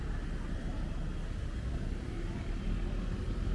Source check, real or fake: real